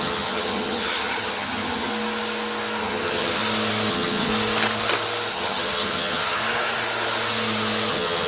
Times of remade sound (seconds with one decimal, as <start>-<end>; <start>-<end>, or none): 0.0-1.9; 2.8-3.4; 3.9-4.3; 5.3-6.4; 7.9-8.3